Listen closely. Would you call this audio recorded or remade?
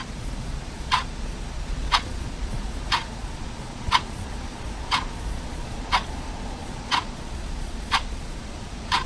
remade